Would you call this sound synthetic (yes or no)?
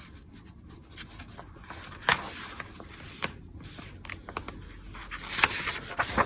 no